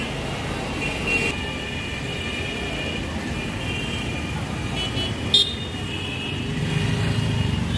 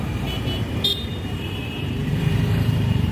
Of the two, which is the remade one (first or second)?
second